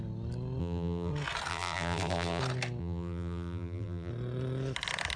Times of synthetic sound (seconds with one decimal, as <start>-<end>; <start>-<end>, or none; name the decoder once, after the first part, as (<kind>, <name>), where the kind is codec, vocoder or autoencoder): 0.6-1.1 (vocoder, BigVGAN v2); 1.5-2.4; 2.8-4.1

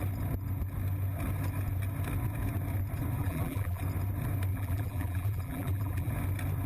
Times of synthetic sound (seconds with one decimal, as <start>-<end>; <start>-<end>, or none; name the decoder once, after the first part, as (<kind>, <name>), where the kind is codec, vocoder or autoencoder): 3.2-3.8 (vocoder, BigVGAN v2); 4.5-6.1

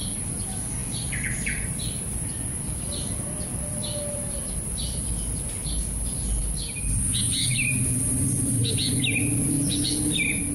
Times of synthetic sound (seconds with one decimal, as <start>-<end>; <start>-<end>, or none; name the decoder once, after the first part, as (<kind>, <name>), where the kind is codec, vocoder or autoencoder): 0.8-5.1 (vocoder, BigVGAN v2); 5.6-7.0

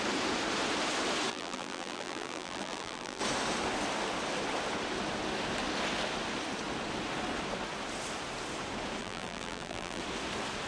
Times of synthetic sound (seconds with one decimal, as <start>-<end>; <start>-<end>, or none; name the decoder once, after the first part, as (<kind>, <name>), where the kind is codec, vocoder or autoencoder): 1.3-3.2 (vocoder, BigVGAN v2); 9.0-10.0

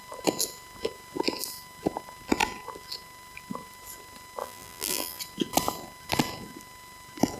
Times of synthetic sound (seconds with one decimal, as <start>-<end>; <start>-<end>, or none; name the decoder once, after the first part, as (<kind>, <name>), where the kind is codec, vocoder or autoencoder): 4.4-5.2 (vocoder, BigVGAN v2)

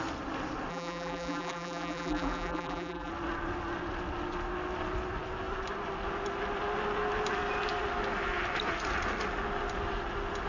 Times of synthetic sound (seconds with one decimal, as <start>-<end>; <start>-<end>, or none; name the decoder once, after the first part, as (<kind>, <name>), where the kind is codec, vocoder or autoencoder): 0.7-3.1 (vocoder, BigVGAN v2)

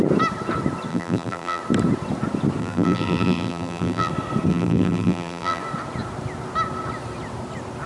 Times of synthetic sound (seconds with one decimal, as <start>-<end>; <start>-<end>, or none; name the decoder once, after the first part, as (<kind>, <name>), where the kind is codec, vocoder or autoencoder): 0.9-1.6 (vocoder, BigVGAN v2); 2.6-4.1; 4.5-5.6

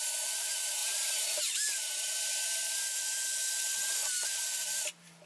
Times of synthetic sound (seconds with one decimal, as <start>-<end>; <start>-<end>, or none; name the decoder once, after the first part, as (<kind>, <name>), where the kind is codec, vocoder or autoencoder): 0.8-2.8 (vocoder, BigVGAN v2)